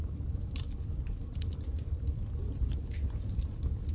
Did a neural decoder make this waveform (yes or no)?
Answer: no